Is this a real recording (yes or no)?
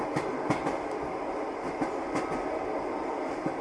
yes